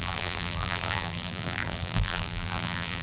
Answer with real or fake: fake